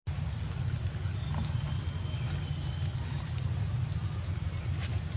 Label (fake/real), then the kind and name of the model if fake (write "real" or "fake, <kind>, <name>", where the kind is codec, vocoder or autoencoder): real